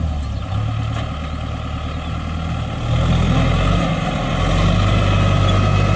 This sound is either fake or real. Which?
real